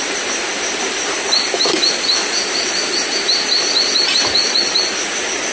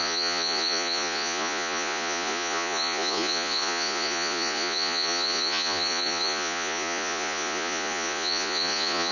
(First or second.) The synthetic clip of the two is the second